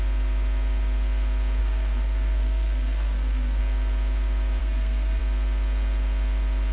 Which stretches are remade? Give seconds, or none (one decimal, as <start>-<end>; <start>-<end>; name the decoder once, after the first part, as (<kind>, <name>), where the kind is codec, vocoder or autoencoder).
1.6-3.6 (codec, SNAC); 4.6-5.2